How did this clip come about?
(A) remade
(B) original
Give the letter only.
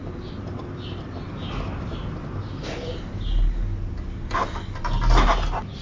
B